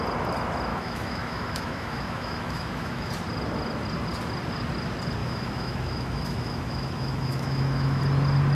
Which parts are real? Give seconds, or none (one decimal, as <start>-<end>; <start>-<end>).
0.0-0.7; 3.1-5.2; 8.0-8.5